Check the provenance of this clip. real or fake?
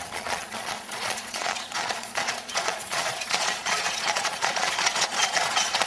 fake